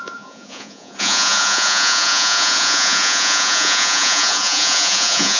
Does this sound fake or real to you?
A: fake